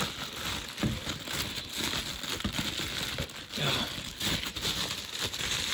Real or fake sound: real